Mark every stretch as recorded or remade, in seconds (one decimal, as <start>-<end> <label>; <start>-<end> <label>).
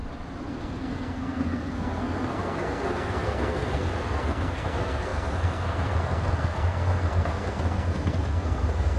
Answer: 0.0-0.5 recorded; 0.5-9.0 remade